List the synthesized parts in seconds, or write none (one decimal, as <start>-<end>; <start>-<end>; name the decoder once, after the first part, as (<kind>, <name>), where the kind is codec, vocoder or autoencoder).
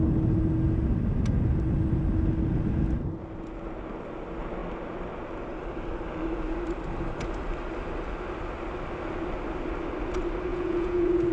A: 10.5-11.3 (vocoder, Vocos)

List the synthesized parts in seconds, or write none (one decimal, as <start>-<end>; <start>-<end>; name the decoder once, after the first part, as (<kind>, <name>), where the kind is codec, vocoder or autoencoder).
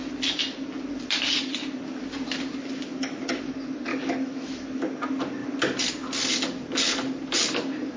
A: 3.9-4.8 (autoencoder, DAC-VAE)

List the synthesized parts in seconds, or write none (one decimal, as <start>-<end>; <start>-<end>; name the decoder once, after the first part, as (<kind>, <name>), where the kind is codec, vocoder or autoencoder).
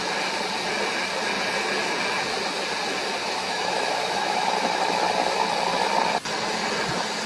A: 3.2-5.0 (autoencoder, DAC-VAE)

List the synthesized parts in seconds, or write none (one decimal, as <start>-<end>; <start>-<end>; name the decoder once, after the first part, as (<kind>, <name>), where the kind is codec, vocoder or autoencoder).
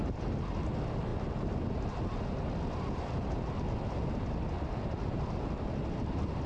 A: none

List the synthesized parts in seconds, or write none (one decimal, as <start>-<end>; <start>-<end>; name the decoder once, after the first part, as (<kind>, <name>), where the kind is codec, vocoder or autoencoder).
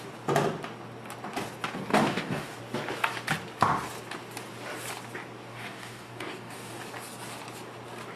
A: 1.9-2.6 (codec, DAC); 5.5-6.8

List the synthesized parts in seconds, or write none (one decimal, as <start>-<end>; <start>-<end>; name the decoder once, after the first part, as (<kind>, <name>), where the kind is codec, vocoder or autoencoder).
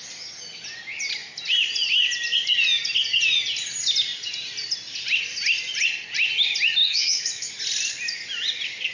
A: 6.8-7.5 (autoencoder, DAC-VAE)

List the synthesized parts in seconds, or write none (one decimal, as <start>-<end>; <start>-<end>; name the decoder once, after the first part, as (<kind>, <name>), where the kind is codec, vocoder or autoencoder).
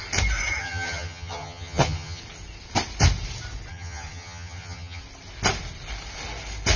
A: 0.6-2.2 (vocoder, HiFi-GAN); 3.7-5.0